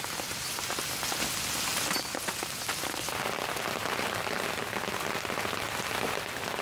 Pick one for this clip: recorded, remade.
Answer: recorded